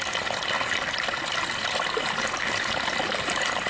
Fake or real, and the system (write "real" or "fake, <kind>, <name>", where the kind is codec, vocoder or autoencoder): real